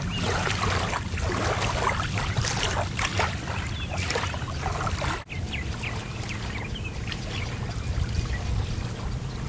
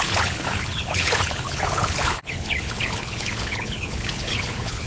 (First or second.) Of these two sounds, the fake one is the second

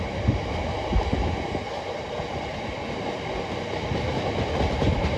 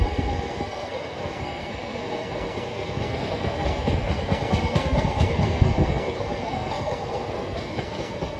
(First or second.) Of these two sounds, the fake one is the second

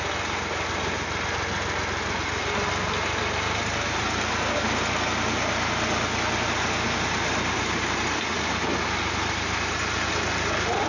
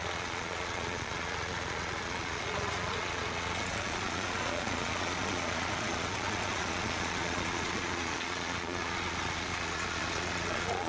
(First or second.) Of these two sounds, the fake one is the second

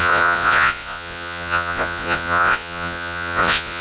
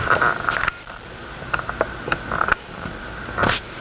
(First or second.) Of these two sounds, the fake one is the first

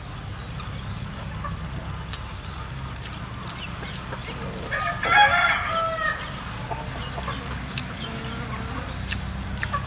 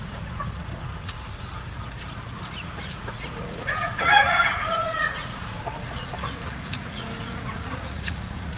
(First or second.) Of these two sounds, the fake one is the second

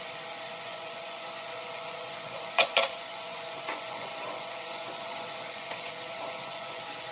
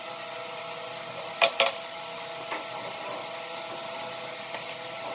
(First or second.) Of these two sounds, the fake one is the first